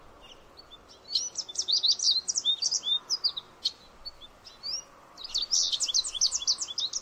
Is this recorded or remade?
recorded